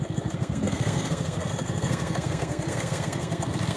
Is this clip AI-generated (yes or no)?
yes